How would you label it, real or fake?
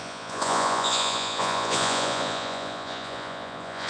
fake